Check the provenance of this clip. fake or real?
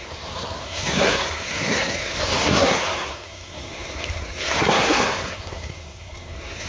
fake